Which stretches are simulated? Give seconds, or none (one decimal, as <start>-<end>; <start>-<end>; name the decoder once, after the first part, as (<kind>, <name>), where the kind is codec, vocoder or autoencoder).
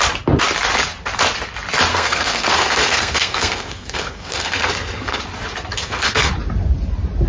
1.9-5.2 (codec, SNAC); 5.7-6.3